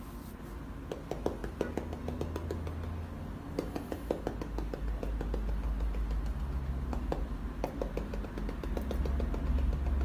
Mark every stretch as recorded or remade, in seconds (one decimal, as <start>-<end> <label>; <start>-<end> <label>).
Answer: 0.0-1.4 recorded; 1.4-2.2 remade; 2.2-10.0 recorded